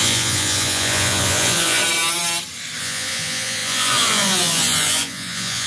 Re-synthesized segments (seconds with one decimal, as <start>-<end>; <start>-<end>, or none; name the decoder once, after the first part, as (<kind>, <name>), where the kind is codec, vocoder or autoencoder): 0.0-1.8 (vocoder, Vocos); 2.8-5.7